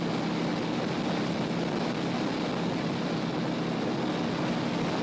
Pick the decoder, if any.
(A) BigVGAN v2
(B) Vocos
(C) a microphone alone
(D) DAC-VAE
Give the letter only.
C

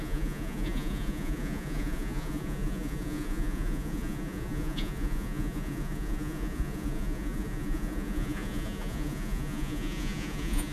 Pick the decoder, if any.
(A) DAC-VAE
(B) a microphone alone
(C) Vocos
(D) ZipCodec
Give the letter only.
C